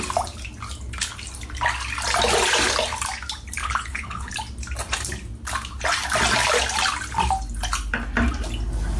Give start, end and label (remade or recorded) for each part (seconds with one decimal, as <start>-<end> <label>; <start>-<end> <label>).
0.0-3.6 recorded; 3.6-4.3 remade; 4.3-9.0 recorded